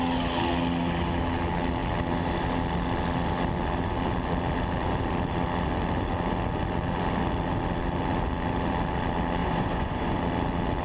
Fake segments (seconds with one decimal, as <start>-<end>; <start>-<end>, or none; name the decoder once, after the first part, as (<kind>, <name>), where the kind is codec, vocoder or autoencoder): 9.4-10.2 (vocoder, Vocos)